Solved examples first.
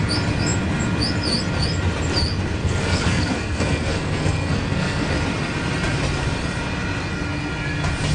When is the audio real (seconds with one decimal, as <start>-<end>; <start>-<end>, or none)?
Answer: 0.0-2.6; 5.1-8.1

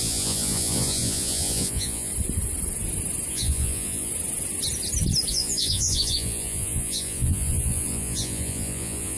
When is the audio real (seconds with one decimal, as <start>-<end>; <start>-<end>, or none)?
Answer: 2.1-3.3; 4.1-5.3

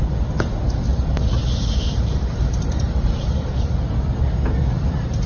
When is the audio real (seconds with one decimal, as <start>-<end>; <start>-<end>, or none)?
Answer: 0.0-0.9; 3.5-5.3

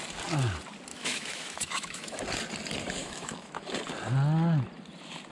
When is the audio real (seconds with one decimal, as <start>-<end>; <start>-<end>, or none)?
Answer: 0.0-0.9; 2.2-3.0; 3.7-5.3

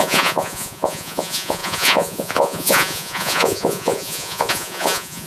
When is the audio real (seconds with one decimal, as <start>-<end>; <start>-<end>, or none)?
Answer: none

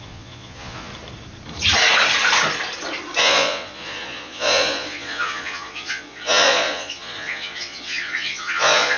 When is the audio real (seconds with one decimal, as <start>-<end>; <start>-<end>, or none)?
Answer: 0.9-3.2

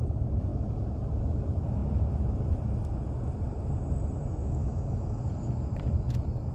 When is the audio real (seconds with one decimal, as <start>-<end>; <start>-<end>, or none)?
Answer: 0.0-4.4; 5.2-6.5